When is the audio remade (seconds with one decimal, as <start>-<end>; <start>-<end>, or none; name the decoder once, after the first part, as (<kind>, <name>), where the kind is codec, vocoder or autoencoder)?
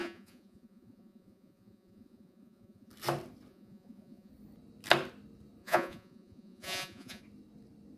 0.0-2.9 (vocoder, Vocos); 3.5-4.3; 5.6-7.2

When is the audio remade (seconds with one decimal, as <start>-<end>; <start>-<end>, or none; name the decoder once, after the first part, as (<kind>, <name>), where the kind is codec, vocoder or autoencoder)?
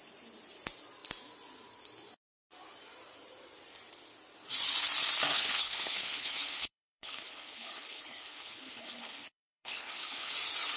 5.3-10.3 (codec, HILCodec)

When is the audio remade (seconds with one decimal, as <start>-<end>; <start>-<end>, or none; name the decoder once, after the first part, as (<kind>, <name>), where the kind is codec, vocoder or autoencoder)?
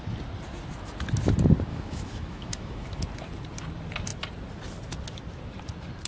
1.7-3.0 (autoencoder, DAC-VAE)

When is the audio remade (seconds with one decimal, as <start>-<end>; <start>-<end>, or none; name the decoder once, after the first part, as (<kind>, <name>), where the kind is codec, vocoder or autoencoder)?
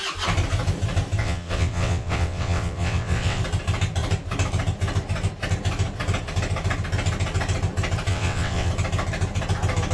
1.2-3.4 (vocoder, WaveNeXt); 8.1-8.7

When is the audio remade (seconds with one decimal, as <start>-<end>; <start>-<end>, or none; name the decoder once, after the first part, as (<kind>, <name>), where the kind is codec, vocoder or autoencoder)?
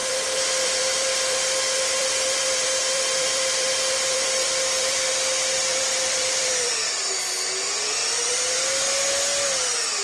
0.0-5.1 (vocoder, BigVGAN v2); 5.7-6.9; 8.0-8.6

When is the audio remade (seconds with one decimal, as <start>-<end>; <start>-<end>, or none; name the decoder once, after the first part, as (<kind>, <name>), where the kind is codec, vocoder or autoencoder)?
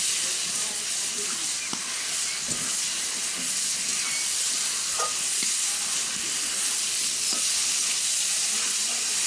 none